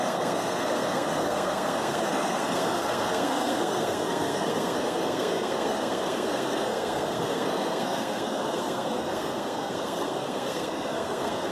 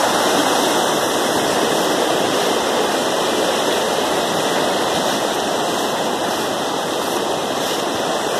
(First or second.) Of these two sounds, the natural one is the second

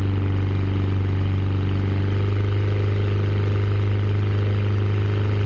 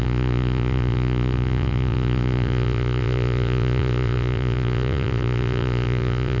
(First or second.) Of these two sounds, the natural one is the first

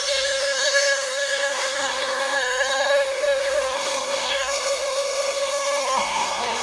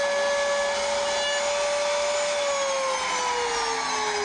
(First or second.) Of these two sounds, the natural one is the second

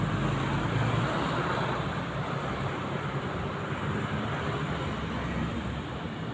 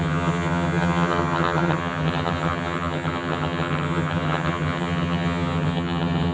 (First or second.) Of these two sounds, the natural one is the first